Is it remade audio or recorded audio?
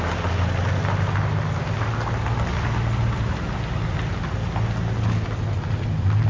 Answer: recorded